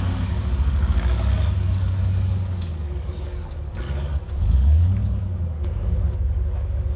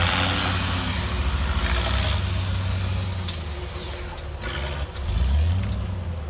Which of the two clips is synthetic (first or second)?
first